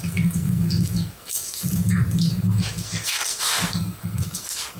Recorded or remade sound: remade